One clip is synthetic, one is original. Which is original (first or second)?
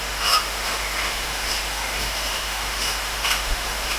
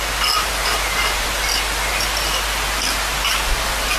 second